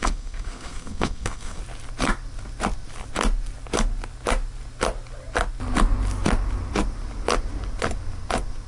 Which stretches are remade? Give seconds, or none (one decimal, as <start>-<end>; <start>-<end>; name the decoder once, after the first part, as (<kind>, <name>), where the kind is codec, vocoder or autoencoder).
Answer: 0.0-1.6 (codec, SNAC)